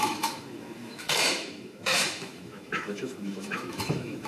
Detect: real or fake fake